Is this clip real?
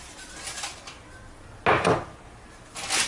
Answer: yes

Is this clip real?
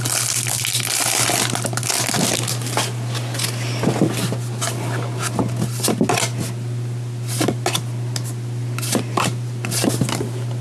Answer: yes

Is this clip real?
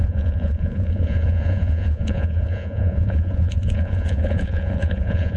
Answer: no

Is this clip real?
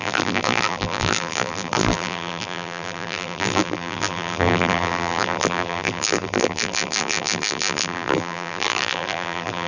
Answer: no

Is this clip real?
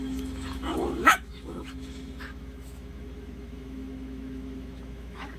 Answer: no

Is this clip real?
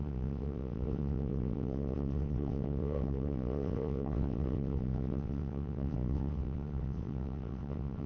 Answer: no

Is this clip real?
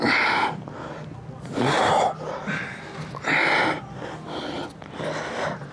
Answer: yes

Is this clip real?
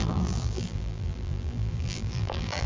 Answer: no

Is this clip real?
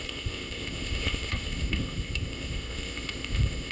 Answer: no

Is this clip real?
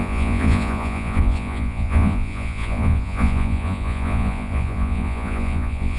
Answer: no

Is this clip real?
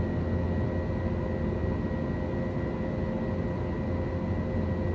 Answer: yes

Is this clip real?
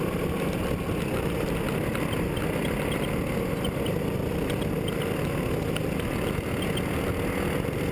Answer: yes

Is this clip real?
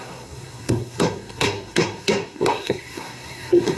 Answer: no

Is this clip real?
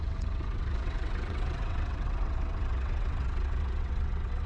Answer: no